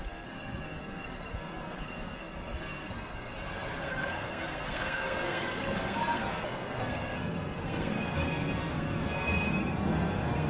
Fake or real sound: fake